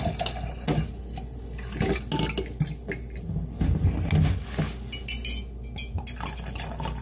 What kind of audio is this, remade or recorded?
recorded